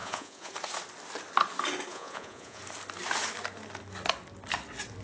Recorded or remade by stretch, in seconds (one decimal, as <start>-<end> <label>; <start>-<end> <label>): 0.0-0.5 remade; 0.5-1.9 recorded; 1.9-2.6 remade; 2.6-5.0 recorded